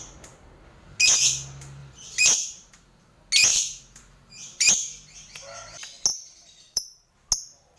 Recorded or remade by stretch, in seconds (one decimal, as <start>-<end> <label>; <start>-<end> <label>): 0.0-1.8 recorded; 1.8-2.7 remade; 2.7-3.5 recorded; 3.5-4.7 remade; 4.7-6.1 recorded; 6.1-7.1 remade; 7.1-7.8 recorded